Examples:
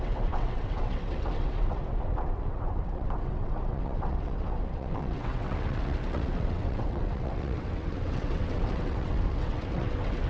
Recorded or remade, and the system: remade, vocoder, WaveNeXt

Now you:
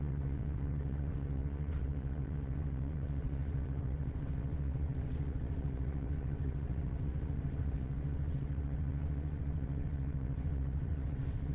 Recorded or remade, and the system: remade, vocoder, WaveNeXt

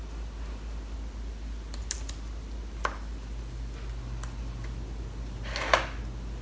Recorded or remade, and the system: recorded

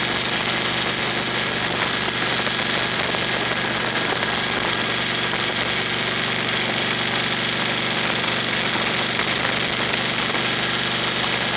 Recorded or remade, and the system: recorded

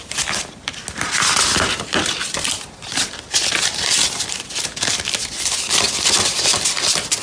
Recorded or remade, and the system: recorded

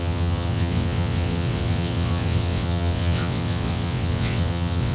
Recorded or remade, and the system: remade, vocoder, WaveNeXt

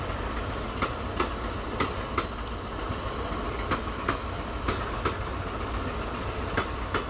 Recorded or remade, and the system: recorded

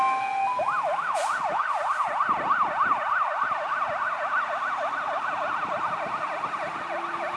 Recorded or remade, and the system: recorded